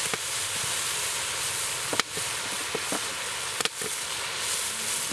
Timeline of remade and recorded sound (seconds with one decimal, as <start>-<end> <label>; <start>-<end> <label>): 0.0-5.1 recorded